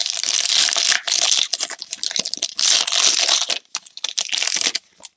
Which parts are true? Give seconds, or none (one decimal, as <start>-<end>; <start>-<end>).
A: 0.0-5.2